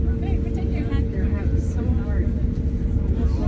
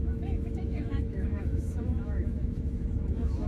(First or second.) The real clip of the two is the first